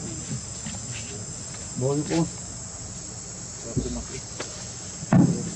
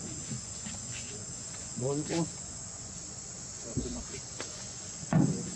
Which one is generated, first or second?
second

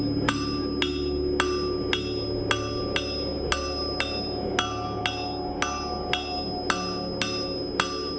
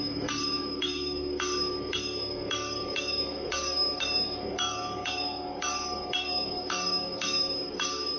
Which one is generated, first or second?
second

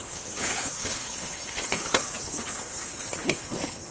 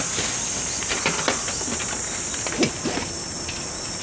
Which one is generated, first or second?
first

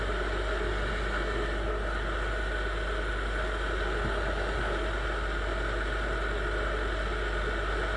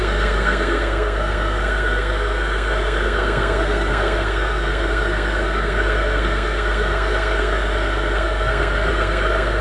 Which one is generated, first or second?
second